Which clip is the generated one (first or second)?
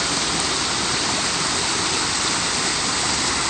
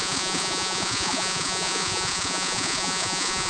second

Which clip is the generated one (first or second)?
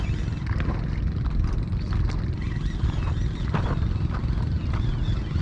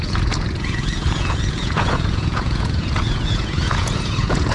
second